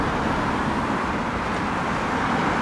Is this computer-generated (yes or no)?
no